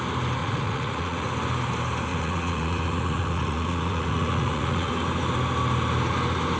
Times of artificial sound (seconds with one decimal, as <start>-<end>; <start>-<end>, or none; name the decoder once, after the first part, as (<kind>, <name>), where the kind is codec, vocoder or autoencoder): 0.4-1.3 (vocoder, Vocos); 2.1-4.9